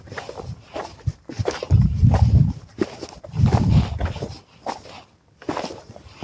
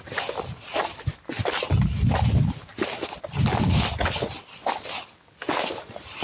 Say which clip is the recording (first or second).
second